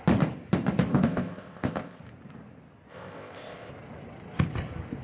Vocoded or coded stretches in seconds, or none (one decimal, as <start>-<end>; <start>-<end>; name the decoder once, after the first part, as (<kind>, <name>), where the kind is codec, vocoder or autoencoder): 0.9-2.0 (codec, ZipCodec); 2.9-3.7